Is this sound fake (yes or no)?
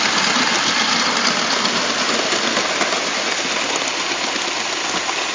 no